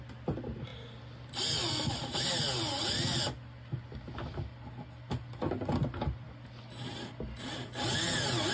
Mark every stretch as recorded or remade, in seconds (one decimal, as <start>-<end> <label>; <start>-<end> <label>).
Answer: 0.0-8.5 recorded